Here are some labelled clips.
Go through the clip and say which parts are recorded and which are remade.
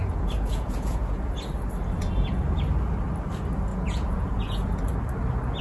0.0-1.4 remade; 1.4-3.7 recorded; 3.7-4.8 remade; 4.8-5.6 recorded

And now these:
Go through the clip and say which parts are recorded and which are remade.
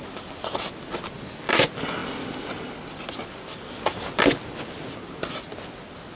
0.0-6.2 recorded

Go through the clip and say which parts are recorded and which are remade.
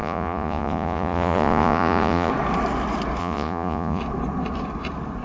0.0-2.3 remade; 2.3-3.2 recorded; 3.2-4.0 remade; 4.0-5.2 recorded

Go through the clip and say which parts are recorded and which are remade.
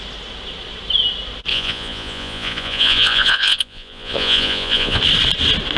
0.0-1.5 recorded; 1.5-5.0 remade; 5.0-5.8 recorded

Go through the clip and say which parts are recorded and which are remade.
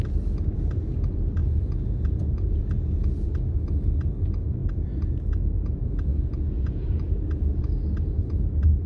0.0-1.4 recorded; 1.4-3.3 remade; 3.3-6.1 recorded; 6.1-7.1 remade; 7.1-8.9 recorded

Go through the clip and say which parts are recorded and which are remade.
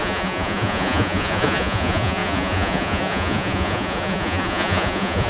0.0-5.3 remade